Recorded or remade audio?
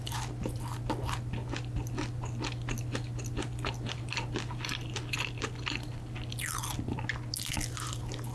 recorded